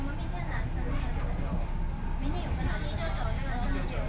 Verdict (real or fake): real